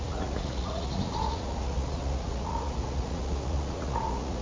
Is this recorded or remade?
remade